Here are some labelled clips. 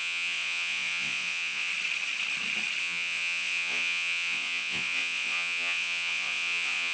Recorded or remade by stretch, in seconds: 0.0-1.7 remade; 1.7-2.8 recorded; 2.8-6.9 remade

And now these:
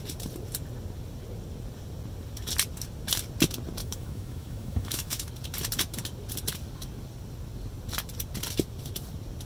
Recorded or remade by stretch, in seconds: 0.0-3.8 recorded; 3.8-5.3 remade; 5.3-9.5 recorded

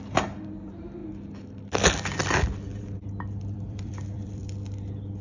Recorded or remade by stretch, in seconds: 0.0-1.0 remade; 1.0-2.8 recorded; 2.8-4.4 remade; 4.4-5.2 recorded

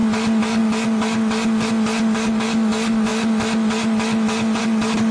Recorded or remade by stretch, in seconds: 0.0-5.1 recorded

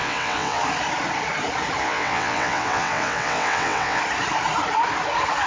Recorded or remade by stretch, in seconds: 0.0-0.6 remade; 0.6-1.8 recorded; 1.8-4.0 remade; 4.0-5.5 recorded

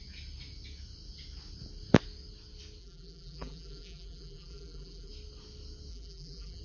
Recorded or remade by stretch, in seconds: 0.0-2.8 recorded; 2.8-5.1 remade; 5.1-5.9 recorded; 5.9-6.6 remade

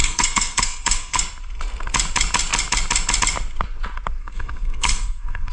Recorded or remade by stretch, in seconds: 0.0-1.2 remade; 1.2-4.2 recorded; 4.2-5.5 remade